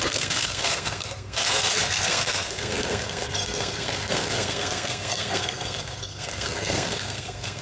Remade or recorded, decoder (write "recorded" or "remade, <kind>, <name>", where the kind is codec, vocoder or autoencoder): remade, codec, SNAC